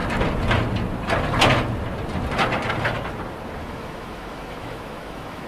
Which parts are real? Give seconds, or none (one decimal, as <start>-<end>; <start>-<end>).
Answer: 0.0-3.6